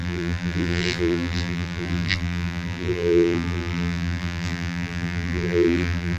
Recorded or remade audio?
remade